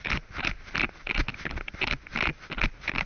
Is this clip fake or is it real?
real